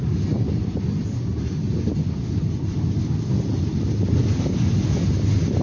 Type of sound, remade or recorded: recorded